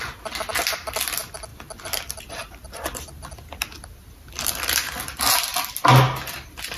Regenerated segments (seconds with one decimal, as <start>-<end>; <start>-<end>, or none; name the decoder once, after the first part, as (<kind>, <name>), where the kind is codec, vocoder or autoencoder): 1.5-2.7 (vocoder, BigVGAN v2)